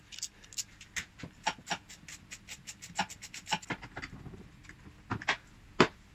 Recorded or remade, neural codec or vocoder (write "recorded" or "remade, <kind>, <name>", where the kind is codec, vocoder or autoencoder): recorded